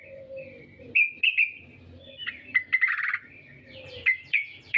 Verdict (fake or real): real